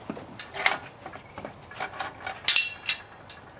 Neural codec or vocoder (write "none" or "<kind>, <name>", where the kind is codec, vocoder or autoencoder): none